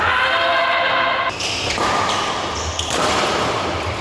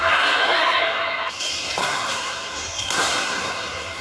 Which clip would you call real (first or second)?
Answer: first